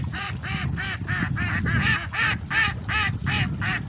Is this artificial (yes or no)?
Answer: no